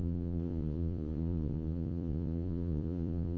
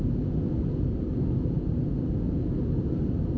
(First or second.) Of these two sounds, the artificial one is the first